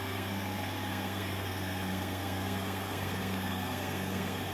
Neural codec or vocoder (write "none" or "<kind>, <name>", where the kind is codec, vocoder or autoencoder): codec, SNAC